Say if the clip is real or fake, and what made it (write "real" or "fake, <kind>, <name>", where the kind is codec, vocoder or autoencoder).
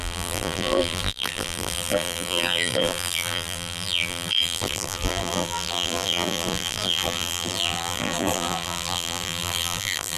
fake, vocoder, BigVGAN v2